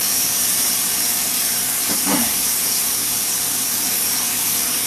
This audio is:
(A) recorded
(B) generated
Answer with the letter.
B